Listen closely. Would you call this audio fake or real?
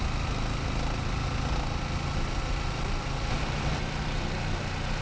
real